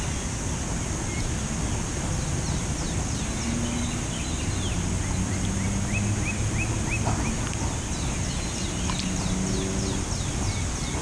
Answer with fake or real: real